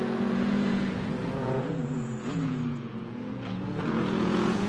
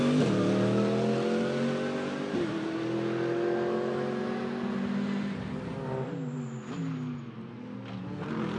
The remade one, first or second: first